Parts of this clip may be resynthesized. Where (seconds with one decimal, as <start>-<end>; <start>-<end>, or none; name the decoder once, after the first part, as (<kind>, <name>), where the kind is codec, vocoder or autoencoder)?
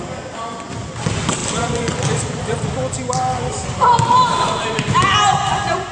1.4-4.8 (vocoder, BigVGAN v2)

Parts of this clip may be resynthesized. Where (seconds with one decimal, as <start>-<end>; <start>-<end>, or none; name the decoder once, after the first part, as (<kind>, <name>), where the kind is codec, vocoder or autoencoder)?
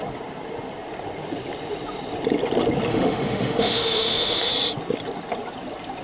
2.9-4.5 (autoencoder, DAC-VAE)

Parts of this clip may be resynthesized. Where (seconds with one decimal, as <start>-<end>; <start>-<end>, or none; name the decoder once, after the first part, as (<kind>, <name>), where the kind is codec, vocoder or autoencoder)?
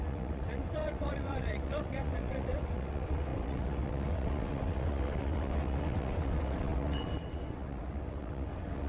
0.0-8.9 (vocoder, WaveNeXt)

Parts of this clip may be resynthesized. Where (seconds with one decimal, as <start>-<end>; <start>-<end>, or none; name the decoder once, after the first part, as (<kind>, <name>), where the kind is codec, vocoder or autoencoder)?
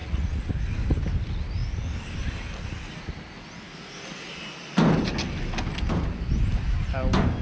0.0-0.5 (vocoder, Vocos)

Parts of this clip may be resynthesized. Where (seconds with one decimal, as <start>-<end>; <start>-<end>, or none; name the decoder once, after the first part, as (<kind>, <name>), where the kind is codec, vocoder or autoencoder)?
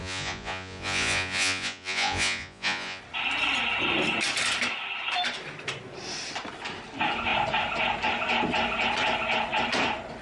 0.0-3.0 (vocoder, Vocos)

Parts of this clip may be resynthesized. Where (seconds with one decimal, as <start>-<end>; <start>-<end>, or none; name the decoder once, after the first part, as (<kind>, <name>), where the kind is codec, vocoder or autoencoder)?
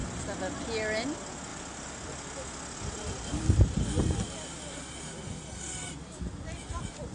none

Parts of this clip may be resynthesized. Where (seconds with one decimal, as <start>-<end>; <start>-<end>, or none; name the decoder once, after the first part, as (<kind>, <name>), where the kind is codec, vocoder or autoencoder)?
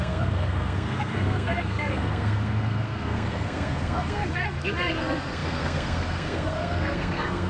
0.0-7.5 (codec, SNAC)